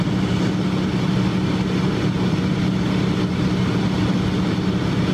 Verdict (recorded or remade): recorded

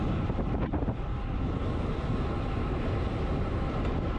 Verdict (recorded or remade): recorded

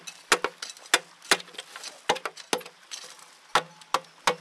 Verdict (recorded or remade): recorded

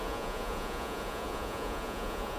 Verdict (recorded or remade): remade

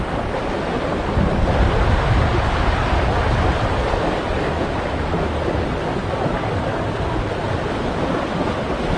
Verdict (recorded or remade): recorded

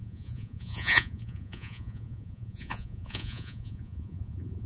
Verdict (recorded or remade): remade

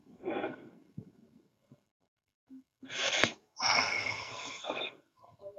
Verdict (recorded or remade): remade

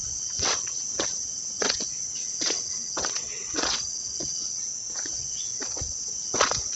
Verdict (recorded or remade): remade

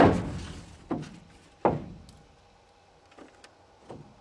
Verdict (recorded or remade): recorded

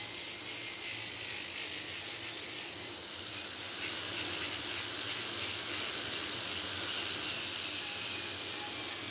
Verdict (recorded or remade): recorded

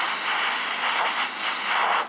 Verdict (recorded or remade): recorded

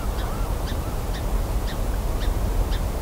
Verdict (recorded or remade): recorded